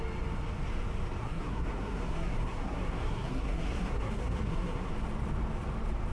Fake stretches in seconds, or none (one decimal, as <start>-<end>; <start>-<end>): 1.2-4.9